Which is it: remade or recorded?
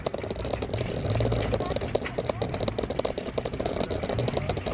recorded